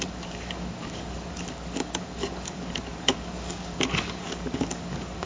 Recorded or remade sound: remade